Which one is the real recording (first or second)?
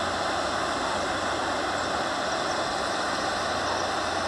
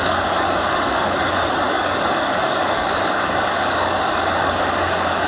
first